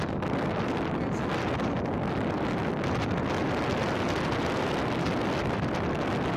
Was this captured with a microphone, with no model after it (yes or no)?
yes